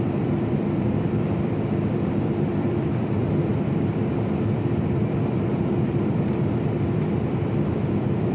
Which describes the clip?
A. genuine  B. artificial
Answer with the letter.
B